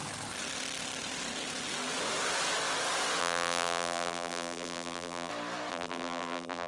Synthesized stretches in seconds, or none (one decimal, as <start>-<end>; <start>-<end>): 3.2-5.3; 5.7-6.7